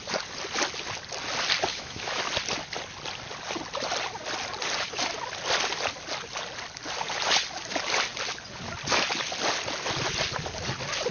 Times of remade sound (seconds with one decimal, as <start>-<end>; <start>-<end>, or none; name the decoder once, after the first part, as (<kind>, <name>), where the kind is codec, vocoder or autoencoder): 1.7-2.2 (autoencoder, DAC-VAE)